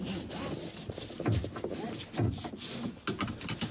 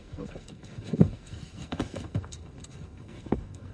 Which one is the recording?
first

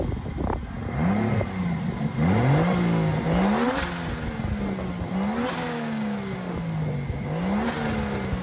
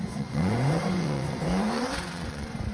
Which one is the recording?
first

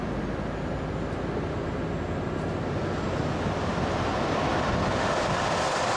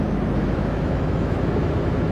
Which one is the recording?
first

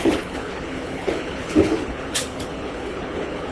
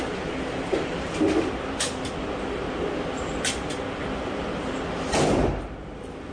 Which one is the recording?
second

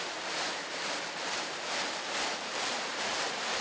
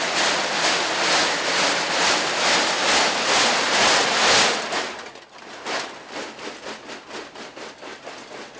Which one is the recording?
second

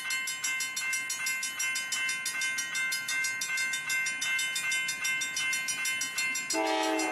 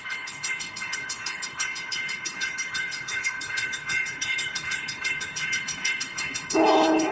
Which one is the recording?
first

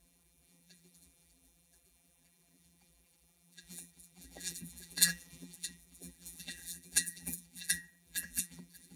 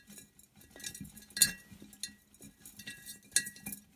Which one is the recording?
second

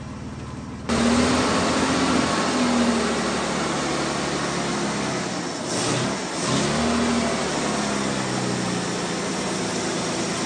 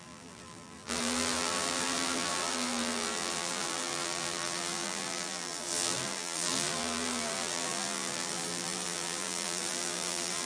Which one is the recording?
first